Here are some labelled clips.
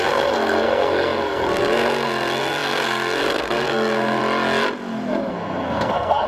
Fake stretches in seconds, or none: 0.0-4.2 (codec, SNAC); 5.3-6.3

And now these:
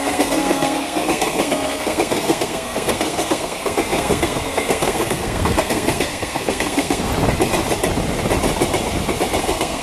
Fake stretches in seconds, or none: 0.0-7.1 (codec, SNAC); 9.4-9.8

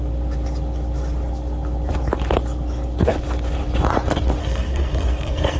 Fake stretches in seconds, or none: 4.4-5.6 (codec, SNAC)